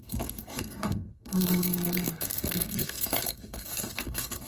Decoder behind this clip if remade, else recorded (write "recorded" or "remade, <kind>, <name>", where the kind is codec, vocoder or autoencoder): remade, codec, SNAC